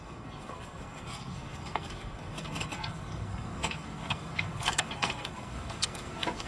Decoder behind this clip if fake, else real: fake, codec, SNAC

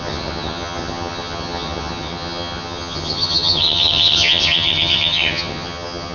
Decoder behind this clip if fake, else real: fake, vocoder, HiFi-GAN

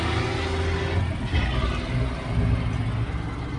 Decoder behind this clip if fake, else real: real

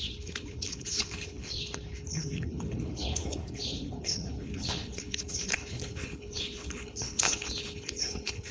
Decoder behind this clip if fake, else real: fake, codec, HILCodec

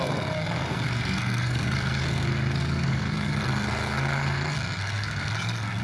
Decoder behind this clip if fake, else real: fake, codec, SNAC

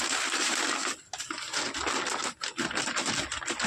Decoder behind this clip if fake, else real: real